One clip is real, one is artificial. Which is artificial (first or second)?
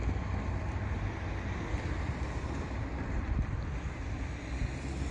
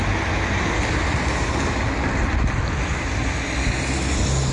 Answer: first